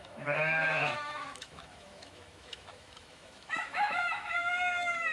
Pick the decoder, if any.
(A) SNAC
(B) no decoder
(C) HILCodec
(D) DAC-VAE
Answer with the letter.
D